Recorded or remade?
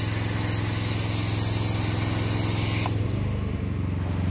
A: recorded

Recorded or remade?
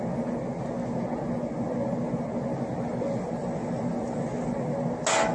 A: recorded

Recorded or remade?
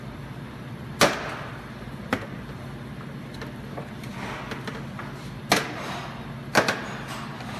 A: recorded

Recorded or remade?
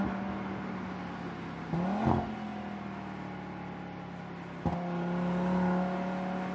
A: recorded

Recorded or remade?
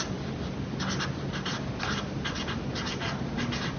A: recorded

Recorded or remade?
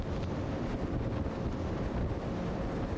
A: recorded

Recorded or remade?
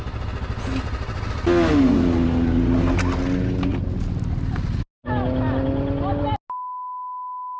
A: recorded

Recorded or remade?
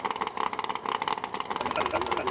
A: recorded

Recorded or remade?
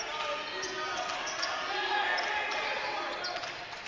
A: recorded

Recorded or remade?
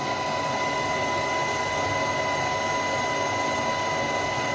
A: recorded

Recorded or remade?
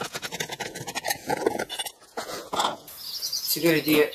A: remade